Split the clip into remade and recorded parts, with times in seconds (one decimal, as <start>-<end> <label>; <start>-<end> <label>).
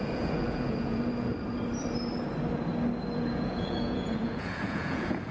0.0-1.3 remade; 1.3-3.3 recorded; 3.3-5.3 remade